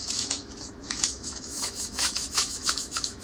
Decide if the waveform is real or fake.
fake